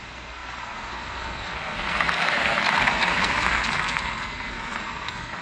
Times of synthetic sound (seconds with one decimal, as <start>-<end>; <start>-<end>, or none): 0.0-5.4